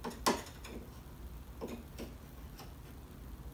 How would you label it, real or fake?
real